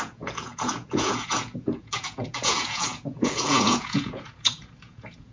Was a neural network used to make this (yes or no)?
yes